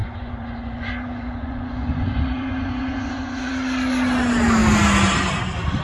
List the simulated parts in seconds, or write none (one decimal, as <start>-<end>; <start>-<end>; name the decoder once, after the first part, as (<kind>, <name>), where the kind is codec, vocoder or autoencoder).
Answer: 0.0-3.5 (vocoder, Vocos)